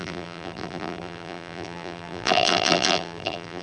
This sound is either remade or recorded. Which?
remade